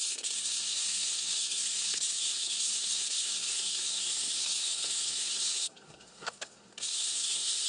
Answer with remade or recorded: remade